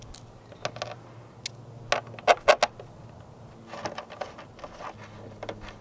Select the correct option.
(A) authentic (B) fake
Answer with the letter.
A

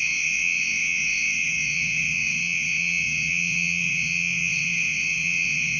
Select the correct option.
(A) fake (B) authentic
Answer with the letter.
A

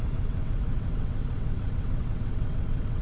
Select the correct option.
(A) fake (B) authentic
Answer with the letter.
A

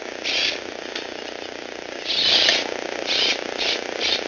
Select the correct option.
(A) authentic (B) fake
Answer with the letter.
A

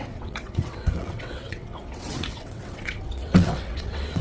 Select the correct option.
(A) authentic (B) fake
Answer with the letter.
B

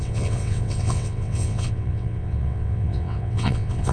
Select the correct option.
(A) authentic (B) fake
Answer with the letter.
B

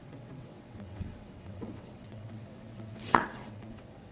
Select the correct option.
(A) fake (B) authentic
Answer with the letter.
A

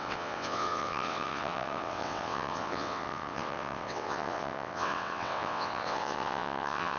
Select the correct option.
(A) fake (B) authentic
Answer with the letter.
A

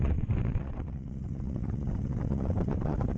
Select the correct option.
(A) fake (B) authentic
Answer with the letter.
A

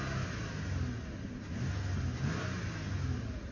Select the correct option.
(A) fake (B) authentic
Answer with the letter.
B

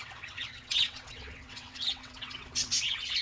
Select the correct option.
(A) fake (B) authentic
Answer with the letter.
A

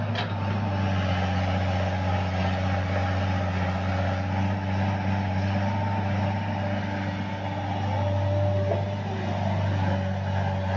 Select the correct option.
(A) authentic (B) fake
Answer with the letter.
A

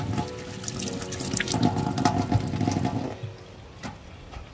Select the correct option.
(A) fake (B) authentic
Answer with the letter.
B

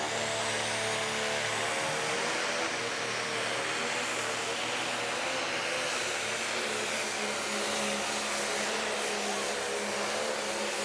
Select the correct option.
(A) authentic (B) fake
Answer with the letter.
A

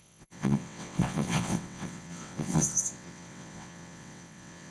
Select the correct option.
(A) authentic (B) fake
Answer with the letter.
B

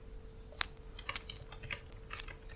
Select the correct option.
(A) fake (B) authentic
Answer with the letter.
B